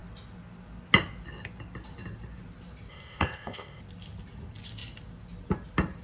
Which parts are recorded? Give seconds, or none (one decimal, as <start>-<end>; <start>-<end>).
0.0-2.9; 3.8-6.0